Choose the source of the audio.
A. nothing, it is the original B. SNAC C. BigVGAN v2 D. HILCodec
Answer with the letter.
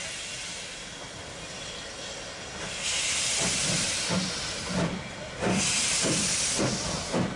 A